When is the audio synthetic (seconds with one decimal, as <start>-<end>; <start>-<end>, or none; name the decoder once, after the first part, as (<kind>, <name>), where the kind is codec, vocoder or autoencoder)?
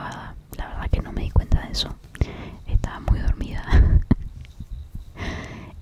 none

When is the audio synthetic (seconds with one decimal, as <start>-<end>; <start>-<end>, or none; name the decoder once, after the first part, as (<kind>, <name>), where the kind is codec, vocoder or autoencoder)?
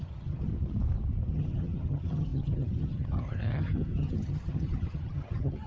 0.0-0.5 (vocoder, HiFi-GAN); 1.3-5.7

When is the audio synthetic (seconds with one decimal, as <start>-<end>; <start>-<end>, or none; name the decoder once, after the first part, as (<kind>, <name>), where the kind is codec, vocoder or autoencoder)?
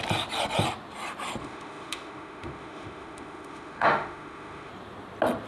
1.4-4.7 (autoencoder, DAC-VAE)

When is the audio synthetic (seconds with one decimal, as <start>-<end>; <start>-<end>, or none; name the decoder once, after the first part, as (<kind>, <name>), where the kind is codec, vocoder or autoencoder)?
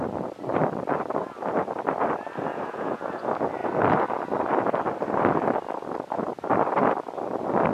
2.5-3.2 (vocoder, Vocos)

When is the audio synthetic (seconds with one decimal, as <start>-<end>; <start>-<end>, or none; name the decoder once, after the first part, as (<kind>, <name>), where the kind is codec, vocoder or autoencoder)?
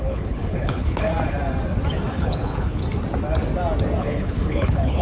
0.0-1.1 (codec, HILCodec); 2.1-2.8; 4.0-5.0